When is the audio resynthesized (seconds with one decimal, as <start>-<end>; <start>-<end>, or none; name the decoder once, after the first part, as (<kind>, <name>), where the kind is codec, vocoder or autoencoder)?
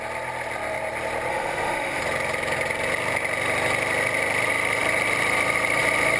1.3-2.0 (autoencoder, DAC-VAE)